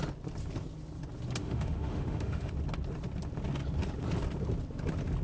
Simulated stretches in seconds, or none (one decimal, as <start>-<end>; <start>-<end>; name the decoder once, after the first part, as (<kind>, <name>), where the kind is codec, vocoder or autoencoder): 1.4-2.5 (autoencoder, DAC-VAE)